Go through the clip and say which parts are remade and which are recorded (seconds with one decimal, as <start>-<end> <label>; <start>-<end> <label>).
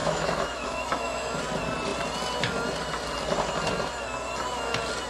0.0-1.4 remade; 1.4-5.1 recorded